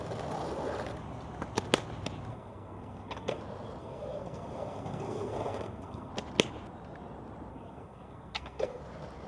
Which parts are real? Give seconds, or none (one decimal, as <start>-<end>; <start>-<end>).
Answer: 0.0-2.3; 3.4-3.8; 6.1-7.5; 8.8-9.3